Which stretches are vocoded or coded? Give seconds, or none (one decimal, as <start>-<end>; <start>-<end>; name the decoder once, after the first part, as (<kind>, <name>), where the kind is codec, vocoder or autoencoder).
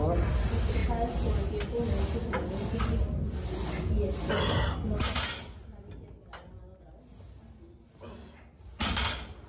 none